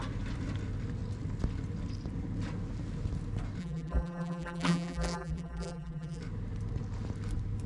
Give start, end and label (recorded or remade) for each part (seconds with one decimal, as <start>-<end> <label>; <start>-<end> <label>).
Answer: 0.0-3.6 recorded; 3.6-6.2 remade; 6.2-7.7 recorded